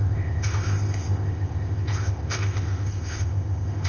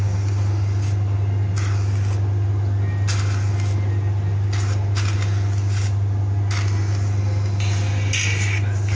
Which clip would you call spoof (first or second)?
first